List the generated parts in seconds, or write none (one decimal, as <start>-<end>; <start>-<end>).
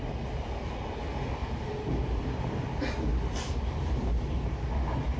none